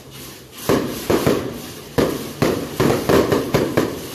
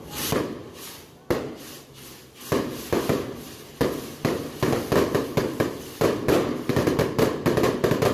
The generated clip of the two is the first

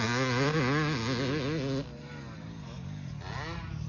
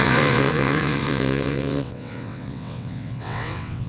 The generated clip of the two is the second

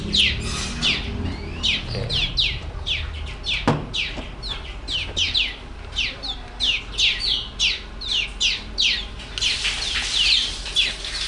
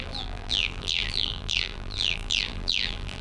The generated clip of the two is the second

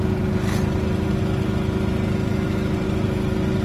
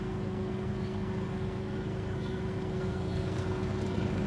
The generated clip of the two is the second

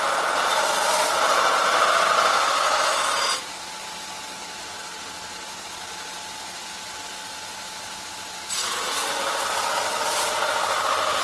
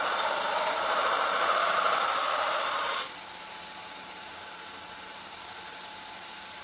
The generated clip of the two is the second